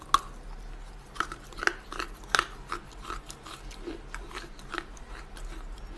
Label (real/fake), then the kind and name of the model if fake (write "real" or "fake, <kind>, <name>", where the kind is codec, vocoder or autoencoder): real